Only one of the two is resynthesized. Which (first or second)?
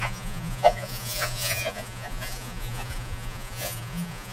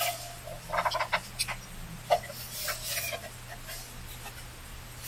first